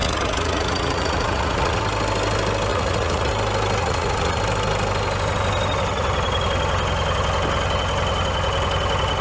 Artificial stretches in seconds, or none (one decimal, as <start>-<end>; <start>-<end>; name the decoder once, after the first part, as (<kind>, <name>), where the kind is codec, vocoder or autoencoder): 0.0-1.8 (vocoder, Vocos); 2.7-3.3; 3.8-4.4